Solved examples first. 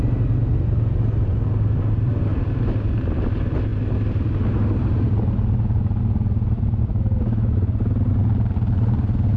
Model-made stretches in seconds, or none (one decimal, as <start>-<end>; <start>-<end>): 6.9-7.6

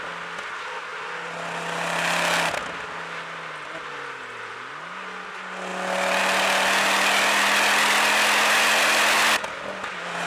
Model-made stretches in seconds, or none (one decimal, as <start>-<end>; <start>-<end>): none

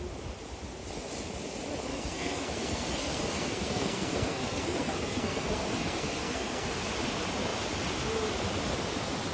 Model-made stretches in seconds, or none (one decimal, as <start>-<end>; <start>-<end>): 1.9-6.8